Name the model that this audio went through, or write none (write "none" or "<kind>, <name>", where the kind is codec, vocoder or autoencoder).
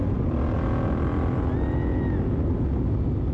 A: none